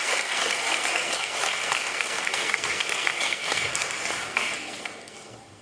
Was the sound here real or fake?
fake